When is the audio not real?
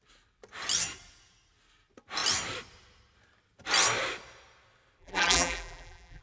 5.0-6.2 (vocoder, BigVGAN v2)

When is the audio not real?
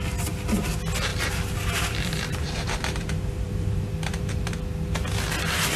1.1-4.6 (vocoder, BigVGAN v2)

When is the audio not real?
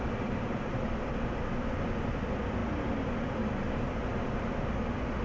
0.0-5.2 (vocoder, BigVGAN v2)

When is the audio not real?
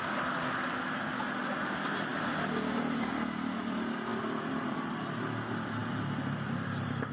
4.1-5.0 (vocoder, BigVGAN v2); 5.8-7.1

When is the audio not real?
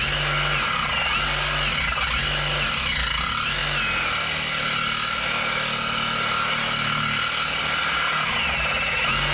none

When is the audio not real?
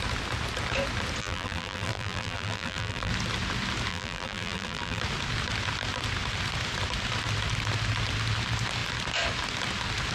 1.2-3.1 (vocoder, BigVGAN v2); 3.9-5.0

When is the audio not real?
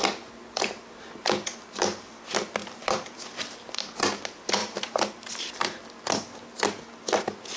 2.6-3.7 (vocoder, BigVGAN v2); 4.6-5.8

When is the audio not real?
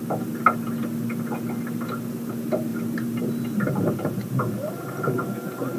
2.7-5.8 (vocoder, BigVGAN v2)